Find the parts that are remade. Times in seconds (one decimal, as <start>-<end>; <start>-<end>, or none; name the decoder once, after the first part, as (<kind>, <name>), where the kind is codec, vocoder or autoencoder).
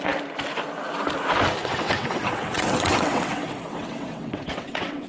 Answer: 1.6-5.1 (vocoder, WaveNeXt)